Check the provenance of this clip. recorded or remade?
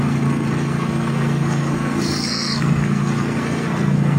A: remade